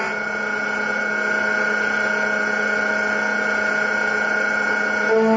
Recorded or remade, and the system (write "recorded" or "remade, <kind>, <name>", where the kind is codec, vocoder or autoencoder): recorded